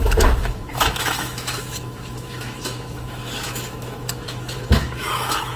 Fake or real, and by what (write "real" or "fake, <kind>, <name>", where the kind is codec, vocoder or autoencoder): fake, autoencoder, DAC-VAE